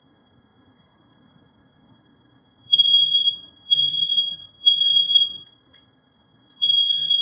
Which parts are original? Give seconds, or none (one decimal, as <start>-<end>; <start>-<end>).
none